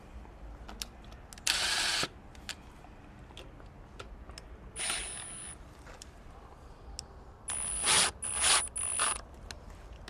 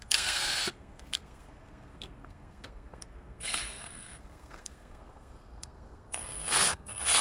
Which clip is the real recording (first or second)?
first